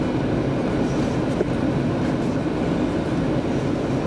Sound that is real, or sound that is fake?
real